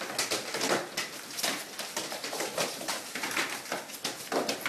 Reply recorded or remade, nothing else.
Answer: recorded